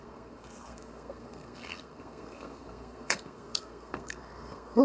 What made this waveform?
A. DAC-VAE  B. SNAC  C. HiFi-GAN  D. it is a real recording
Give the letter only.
B